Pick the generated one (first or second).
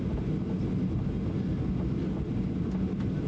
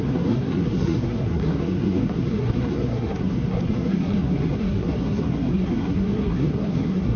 second